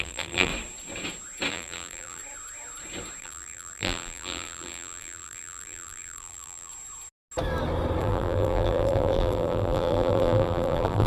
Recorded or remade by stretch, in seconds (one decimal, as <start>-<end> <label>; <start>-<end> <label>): 0.0-0.5 remade; 0.5-1.5 recorded; 1.5-2.2 remade; 2.2-3.2 recorded; 3.2-6.7 remade; 6.7-8.0 recorded; 8.0-11.1 remade